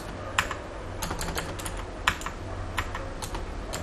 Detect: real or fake real